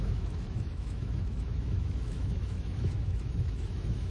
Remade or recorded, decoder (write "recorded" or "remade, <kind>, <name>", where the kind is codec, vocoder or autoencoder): remade, autoencoder, DAC-VAE